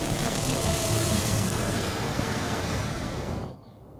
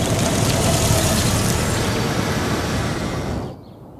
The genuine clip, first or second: second